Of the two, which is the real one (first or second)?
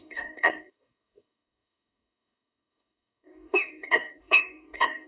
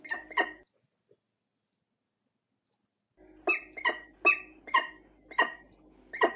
second